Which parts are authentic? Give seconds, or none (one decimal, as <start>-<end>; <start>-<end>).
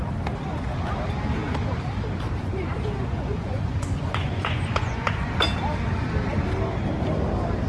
0.0-2.4; 5.3-7.7